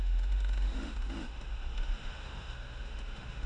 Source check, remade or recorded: remade